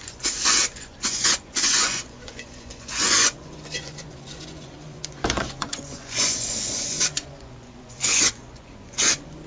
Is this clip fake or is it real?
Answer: fake